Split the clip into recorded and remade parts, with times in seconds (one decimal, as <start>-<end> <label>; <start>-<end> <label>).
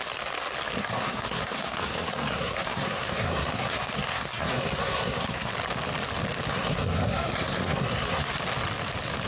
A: 0.0-0.8 recorded; 0.8-5.5 remade; 5.5-6.5 recorded; 6.5-8.4 remade; 8.4-9.3 recorded